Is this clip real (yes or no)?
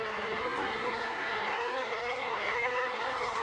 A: no